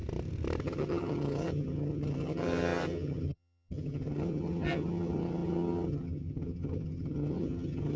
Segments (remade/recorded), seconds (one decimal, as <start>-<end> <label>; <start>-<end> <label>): 0.0-0.6 recorded; 0.6-8.0 remade

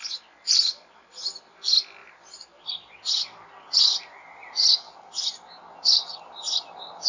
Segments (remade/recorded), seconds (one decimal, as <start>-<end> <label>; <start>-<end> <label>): 0.0-7.1 recorded

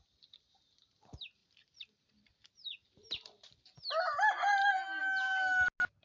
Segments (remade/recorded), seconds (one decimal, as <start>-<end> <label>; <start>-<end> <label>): 0.0-6.0 recorded

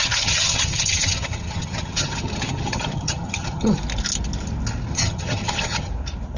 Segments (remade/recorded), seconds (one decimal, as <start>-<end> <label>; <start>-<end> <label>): 0.0-3.8 remade; 3.8-4.9 recorded; 4.9-5.9 remade; 5.9-6.4 recorded

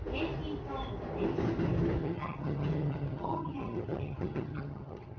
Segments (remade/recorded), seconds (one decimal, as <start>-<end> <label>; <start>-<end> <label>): 0.0-2.0 recorded; 2.0-5.2 remade

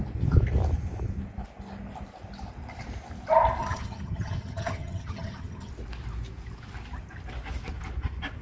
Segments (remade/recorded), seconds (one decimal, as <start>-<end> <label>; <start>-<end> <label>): 0.0-3.6 recorded; 3.6-5.7 remade; 5.7-8.4 recorded

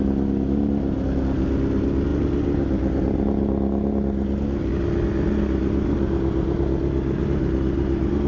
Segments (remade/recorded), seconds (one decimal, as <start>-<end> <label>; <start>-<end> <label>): 0.0-8.3 recorded

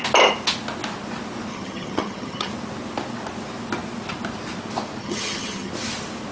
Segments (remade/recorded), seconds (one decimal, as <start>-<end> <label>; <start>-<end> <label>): 0.0-1.5 recorded; 1.5-2.5 remade; 2.5-5.0 recorded; 5.0-5.7 remade; 5.7-6.3 recorded